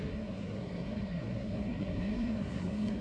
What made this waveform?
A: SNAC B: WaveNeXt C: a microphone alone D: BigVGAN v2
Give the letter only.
A